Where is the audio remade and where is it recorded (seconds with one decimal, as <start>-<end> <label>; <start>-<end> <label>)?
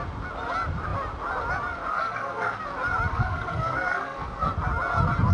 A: 0.0-1.9 recorded; 1.9-2.6 remade; 2.6-3.1 recorded; 3.1-4.5 remade; 4.5-5.3 recorded